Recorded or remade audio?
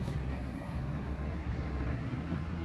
remade